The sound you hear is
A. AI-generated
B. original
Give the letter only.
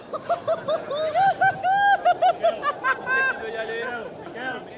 B